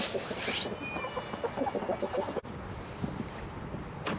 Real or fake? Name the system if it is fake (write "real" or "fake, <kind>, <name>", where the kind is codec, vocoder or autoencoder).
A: real